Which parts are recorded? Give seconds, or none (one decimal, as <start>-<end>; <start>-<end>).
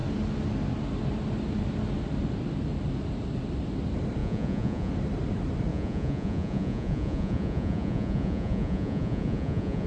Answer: 0.0-4.2; 4.9-5.7